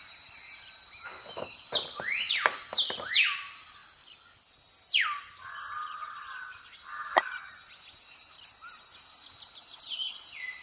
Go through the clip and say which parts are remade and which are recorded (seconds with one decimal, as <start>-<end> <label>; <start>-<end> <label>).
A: 0.0-10.6 recorded